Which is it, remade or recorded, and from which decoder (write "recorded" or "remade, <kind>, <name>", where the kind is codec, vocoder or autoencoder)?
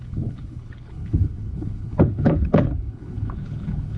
remade, codec, HILCodec